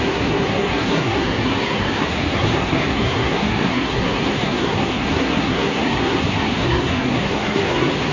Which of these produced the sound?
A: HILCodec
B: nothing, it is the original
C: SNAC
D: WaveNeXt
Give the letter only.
C